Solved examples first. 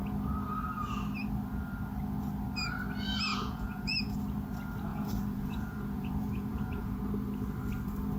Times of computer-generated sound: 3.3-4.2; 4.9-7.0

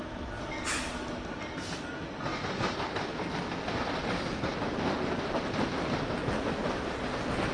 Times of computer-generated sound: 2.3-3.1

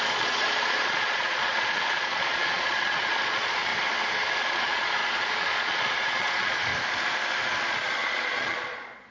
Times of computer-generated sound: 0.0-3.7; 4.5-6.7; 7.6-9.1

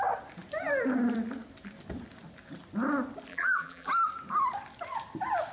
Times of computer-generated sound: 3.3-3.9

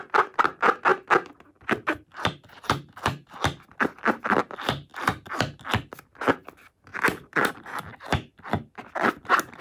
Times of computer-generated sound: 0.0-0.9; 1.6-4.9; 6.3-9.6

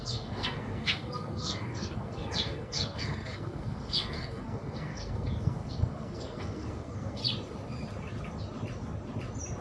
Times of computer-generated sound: 0.0-7.2